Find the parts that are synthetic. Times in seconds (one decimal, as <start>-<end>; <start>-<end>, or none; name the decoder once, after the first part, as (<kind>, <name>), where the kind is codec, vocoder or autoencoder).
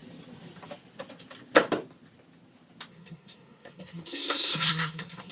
2.9-5.3 (codec, SNAC)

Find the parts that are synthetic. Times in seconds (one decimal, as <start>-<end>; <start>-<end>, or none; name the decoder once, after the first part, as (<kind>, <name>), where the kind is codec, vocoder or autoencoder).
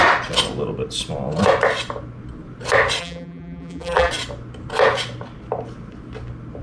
3.0-4.1 (vocoder, BigVGAN v2)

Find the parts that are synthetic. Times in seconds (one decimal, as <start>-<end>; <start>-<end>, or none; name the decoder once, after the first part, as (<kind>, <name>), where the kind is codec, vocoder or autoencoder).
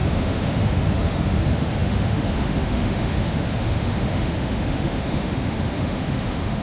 0.0-6.6 (autoencoder, DAC-VAE)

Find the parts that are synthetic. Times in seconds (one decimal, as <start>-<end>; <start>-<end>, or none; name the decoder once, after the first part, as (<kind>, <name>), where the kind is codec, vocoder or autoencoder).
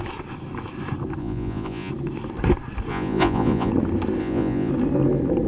1.2-1.9 (vocoder, Vocos); 2.9-3.7; 4.2-4.7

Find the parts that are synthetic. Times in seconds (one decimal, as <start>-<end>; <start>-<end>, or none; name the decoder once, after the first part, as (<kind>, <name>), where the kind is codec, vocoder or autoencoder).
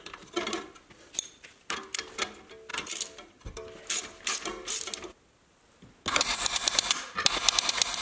none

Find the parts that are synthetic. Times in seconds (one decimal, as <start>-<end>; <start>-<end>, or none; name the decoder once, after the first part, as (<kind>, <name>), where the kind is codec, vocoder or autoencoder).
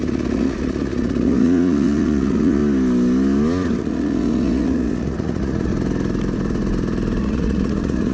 0.0-2.6 (vocoder, Vocos); 3.8-5.7; 7.2-8.1